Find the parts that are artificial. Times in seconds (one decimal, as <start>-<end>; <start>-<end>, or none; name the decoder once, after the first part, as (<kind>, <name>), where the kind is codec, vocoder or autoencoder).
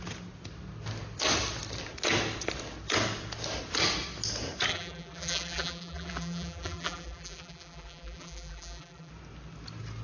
4.7-9.1 (vocoder, BigVGAN v2)